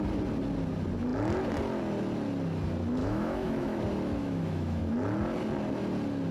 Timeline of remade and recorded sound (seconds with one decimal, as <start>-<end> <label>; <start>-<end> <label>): 0.0-3.0 recorded; 3.0-3.8 remade; 3.8-4.2 recorded; 4.2-4.8 remade; 4.8-6.3 recorded